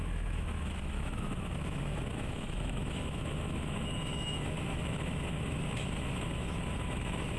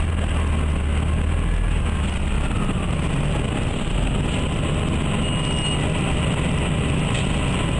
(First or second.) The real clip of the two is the second